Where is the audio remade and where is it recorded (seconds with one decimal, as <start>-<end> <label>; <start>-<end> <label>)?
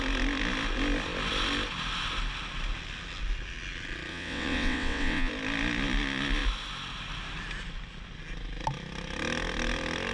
0.0-4.1 recorded; 4.1-5.3 remade; 5.3-10.1 recorded